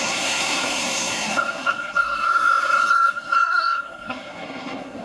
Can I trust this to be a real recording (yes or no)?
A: no